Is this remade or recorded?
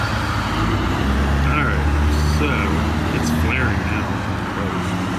recorded